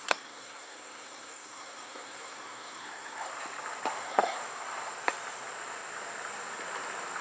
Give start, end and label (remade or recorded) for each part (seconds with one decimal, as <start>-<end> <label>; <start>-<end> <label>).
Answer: 0.0-3.3 remade; 3.3-4.0 recorded; 4.0-4.4 remade; 4.4-7.2 recorded

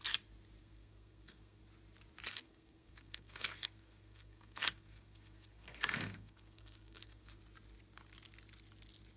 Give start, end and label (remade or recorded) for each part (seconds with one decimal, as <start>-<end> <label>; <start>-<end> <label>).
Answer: 0.0-0.6 recorded; 0.6-1.6 remade; 1.6-2.3 recorded; 2.3-7.4 remade; 7.4-9.2 recorded

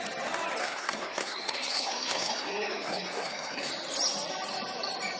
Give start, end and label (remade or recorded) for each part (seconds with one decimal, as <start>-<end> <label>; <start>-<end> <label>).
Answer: 0.0-0.6 recorded; 0.6-3.7 remade; 3.7-5.2 recorded

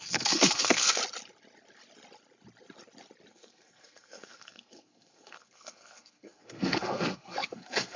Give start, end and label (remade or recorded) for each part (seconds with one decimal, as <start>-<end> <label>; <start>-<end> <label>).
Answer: 0.0-1.0 remade; 1.0-3.3 recorded; 3.3-8.0 remade

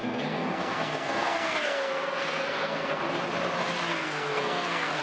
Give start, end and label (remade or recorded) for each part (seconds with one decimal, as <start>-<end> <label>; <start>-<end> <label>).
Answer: 0.0-3.0 remade; 3.0-3.9 recorded; 3.9-5.0 remade

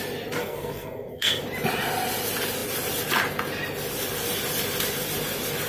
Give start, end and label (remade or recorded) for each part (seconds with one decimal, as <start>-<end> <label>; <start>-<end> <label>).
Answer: 0.0-0.4 recorded; 0.4-1.4 remade; 1.4-5.7 recorded